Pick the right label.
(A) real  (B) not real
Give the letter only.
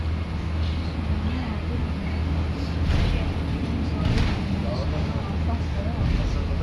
A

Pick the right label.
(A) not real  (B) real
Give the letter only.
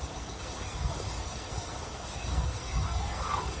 A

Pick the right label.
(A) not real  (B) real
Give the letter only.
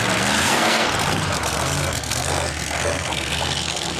A